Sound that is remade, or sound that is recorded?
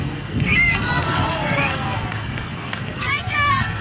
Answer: remade